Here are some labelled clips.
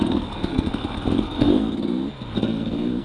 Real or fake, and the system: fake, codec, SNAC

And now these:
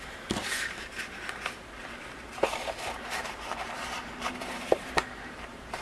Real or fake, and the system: fake, vocoder, BigVGAN v2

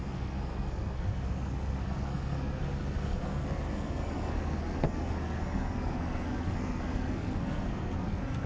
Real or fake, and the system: fake, codec, SNAC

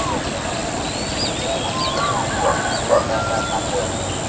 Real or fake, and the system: real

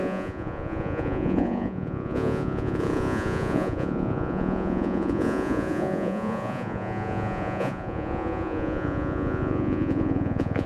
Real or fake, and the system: fake, vocoder, Vocos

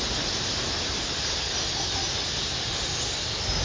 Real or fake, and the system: real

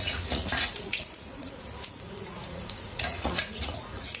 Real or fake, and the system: fake, vocoder, Vocos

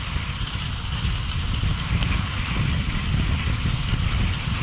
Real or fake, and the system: real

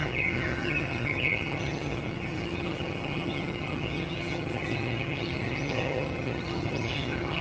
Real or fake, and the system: fake, vocoder, HiFi-GAN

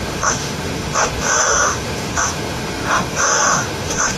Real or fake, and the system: fake, autoencoder, DAC-VAE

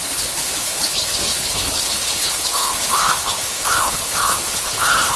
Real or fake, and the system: fake, codec, HILCodec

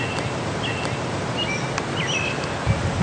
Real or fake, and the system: real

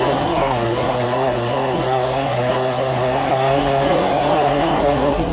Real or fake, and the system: fake, codec, SNAC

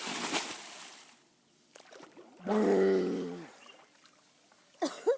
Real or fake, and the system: real